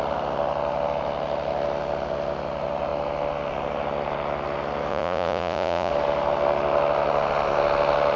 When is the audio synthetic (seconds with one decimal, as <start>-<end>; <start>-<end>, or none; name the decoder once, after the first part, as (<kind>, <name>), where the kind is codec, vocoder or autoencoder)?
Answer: 4.9-5.9 (vocoder, Vocos)